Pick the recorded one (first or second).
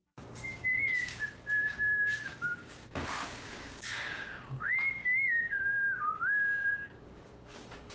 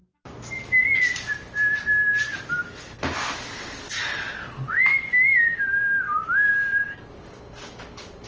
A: second